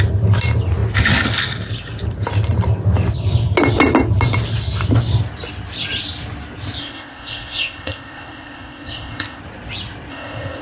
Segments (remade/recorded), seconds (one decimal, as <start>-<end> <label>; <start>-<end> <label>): 0.0-6.8 recorded; 6.8-9.4 remade; 9.4-10.1 recorded; 10.1-10.6 remade